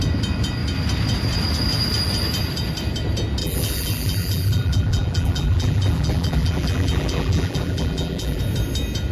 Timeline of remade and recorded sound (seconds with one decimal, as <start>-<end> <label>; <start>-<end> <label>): 0.0-3.4 recorded; 3.4-8.4 remade; 8.4-9.1 recorded